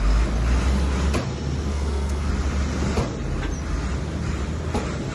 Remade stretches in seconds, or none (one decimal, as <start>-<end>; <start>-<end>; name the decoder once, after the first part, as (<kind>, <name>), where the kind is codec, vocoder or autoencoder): 1.7-2.3 (codec, SNAC)